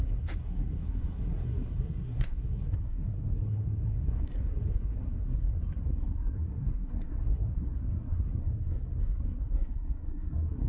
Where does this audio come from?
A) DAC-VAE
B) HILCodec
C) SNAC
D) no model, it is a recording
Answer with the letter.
C